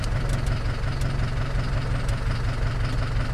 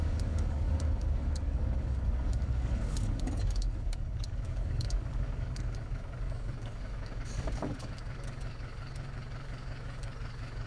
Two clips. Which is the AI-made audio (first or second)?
second